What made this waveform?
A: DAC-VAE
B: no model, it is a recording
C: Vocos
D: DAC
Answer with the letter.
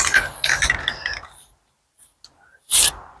B